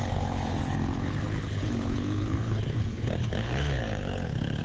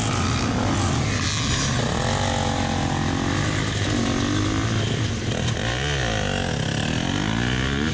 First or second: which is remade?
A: first